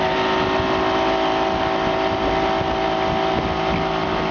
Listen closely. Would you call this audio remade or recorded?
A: recorded